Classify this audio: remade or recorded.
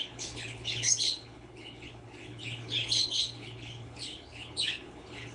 remade